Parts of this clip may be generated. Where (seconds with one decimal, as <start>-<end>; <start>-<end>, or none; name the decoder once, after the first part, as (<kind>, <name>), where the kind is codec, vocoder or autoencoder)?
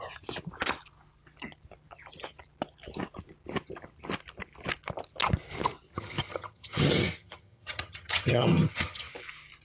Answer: 5.9-9.1 (vocoder, HiFi-GAN)